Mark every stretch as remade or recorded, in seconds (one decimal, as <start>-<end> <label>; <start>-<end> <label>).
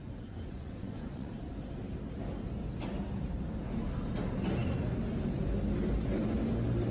0.0-1.3 remade; 1.3-6.9 recorded